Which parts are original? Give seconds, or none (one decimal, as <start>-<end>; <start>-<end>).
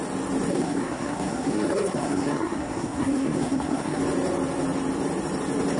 0.0-0.5; 4.0-5.8